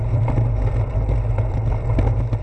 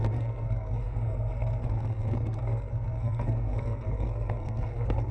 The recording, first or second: first